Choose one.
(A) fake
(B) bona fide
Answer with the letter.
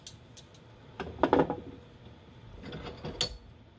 B